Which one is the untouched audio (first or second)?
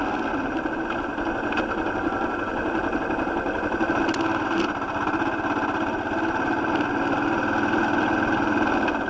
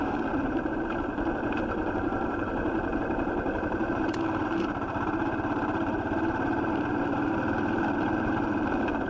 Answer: first